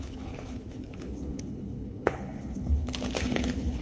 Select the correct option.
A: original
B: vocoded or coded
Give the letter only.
B